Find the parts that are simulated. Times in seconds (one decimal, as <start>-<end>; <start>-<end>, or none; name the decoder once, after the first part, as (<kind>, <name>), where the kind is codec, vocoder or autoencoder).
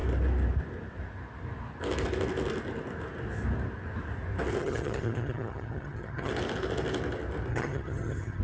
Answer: 4.6-6.3 (vocoder, HiFi-GAN); 7.5-8.4